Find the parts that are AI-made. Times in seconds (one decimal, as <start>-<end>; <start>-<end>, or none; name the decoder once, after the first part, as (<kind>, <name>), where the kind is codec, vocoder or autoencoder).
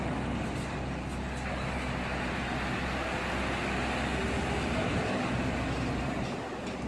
none